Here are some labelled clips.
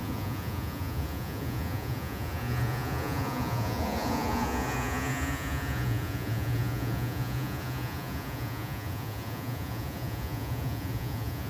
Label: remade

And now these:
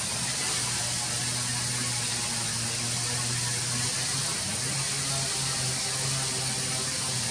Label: recorded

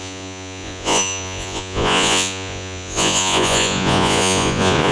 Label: remade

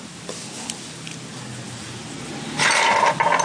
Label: recorded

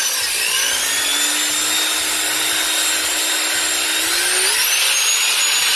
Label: recorded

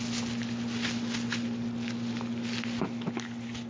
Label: recorded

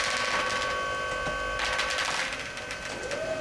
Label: recorded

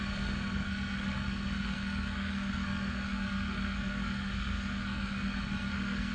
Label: remade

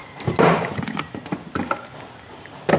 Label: recorded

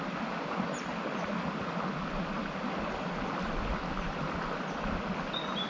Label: recorded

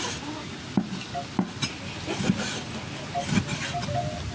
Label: recorded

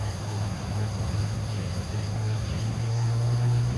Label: remade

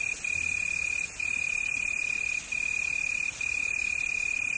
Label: recorded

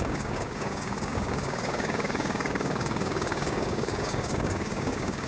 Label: remade